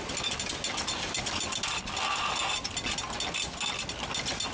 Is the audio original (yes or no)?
yes